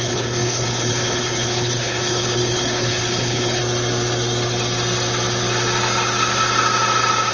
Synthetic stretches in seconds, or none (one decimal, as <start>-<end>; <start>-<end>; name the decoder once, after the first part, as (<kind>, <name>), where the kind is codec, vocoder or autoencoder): 0.0-3.6 (codec, HILCodec)